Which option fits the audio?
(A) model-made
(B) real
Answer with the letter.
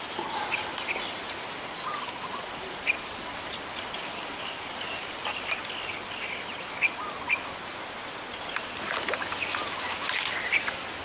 B